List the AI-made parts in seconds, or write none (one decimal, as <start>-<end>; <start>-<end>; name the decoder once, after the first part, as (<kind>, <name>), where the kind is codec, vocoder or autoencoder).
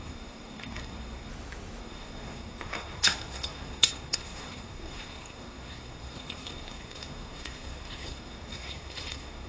0.0-1.3 (codec, SNAC); 1.8-9.5